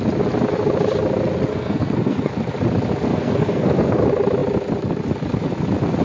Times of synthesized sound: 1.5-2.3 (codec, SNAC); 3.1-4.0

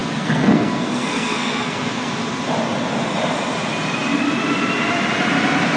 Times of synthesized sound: 0.0-2.1 (codec, SNAC)

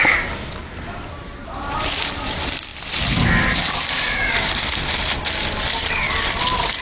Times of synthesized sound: none

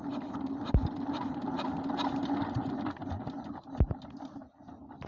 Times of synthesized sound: none

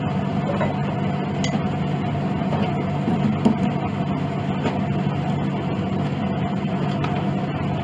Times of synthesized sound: none

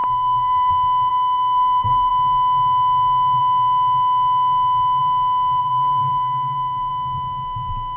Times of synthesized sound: 0.0-0.7 (codec, SNAC); 1.1-2.1; 5.6-6.9

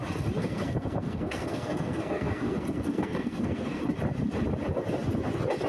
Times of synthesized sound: 0.4-3.8 (codec, SNAC)